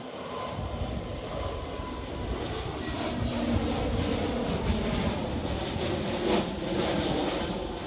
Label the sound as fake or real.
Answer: real